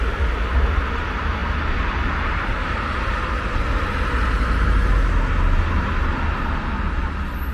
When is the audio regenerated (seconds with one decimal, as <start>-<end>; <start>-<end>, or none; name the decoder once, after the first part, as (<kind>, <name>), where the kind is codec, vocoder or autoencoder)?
none